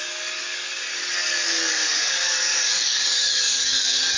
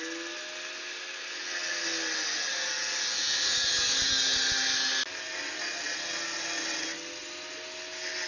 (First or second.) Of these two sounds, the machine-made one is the first